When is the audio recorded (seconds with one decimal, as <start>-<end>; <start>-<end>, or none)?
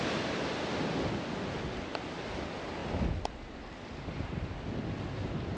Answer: 0.0-2.8; 5.1-5.6